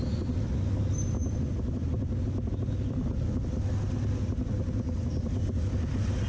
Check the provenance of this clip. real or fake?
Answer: real